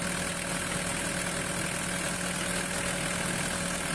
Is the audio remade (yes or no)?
no